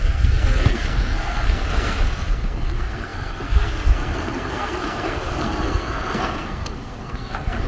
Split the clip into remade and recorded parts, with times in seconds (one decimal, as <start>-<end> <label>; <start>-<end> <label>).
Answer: 0.0-7.7 remade